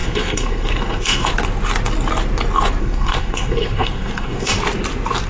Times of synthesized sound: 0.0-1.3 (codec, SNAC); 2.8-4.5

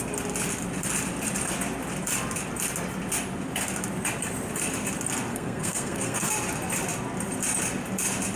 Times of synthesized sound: 5.3-6.3 (codec, SNAC)